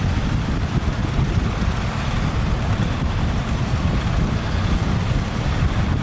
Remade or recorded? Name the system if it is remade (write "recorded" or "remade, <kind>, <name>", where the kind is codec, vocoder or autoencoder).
recorded